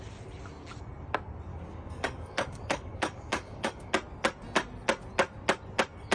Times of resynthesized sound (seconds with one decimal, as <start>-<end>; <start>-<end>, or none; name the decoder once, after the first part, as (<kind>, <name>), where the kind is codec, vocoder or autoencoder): 1.5-3.9 (codec, DAC)